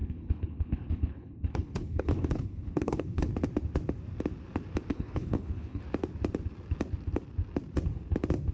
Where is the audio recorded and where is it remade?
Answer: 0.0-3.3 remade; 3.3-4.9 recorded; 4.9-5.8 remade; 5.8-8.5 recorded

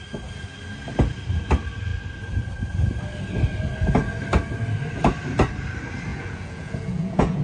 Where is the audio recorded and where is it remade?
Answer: 0.0-6.1 recorded; 6.1-7.4 remade

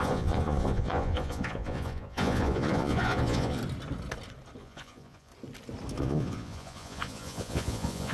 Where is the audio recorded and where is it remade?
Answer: 0.0-3.6 remade; 3.6-4.6 recorded; 4.6-5.3 remade; 5.3-6.0 recorded; 6.0-8.1 remade